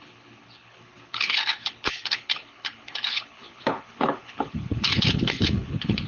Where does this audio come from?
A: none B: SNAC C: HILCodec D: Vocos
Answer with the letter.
C